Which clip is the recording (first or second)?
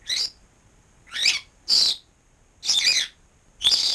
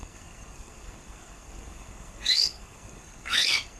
first